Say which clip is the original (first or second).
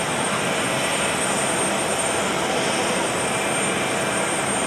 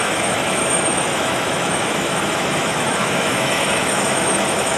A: first